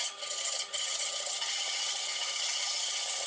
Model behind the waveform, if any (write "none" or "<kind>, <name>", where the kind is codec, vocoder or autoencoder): vocoder, HiFi-GAN